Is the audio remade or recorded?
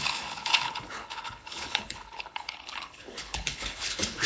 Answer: remade